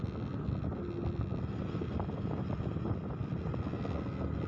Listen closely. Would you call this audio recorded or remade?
recorded